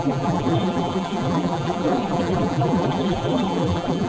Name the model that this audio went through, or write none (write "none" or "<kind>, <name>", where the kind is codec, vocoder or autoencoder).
vocoder, BigVGAN v2